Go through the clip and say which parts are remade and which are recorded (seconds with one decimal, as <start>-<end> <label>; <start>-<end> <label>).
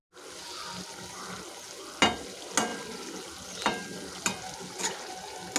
0.0-5.6 recorded